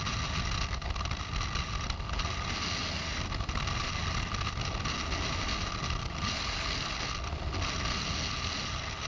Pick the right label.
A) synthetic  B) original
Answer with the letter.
B